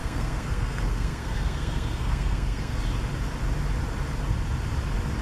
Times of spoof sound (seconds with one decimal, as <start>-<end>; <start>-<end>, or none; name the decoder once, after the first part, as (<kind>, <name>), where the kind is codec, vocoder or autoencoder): 0.0-2.8 (codec, SNAC)